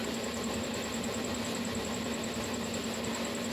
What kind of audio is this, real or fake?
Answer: real